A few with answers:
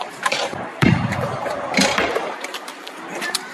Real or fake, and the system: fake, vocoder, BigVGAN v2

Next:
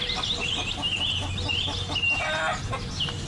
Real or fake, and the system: real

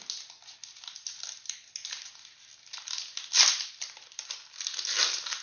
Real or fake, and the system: real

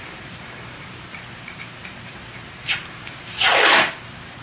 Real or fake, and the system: fake, vocoder, BigVGAN v2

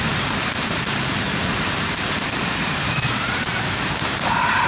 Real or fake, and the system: fake, vocoder, BigVGAN v2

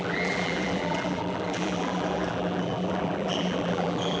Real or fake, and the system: fake, vocoder, BigVGAN v2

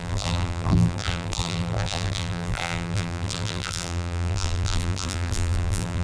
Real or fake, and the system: fake, vocoder, BigVGAN v2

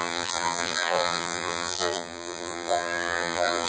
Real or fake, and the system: fake, vocoder, BigVGAN v2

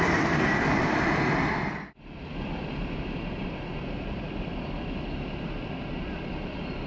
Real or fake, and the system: fake, vocoder, BigVGAN v2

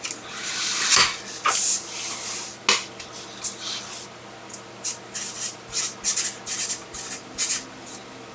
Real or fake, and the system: real